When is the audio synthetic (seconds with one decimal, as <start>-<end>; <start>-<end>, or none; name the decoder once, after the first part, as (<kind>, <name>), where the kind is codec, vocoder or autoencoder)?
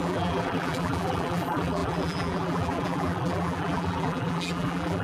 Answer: 0.0-5.0 (vocoder, BigVGAN v2)